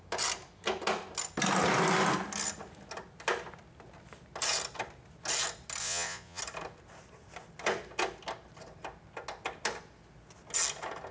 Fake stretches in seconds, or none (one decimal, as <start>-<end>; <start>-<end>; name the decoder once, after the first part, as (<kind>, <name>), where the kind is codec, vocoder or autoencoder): 5.8-6.4 (vocoder, Vocos)